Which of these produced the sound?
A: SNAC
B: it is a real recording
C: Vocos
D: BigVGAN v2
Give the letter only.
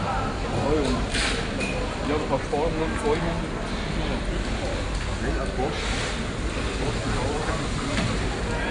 B